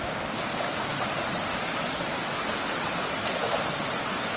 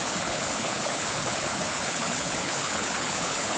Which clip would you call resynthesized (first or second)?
second